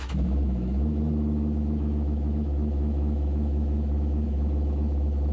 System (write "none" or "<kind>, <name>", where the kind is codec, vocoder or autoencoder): autoencoder, DAC-VAE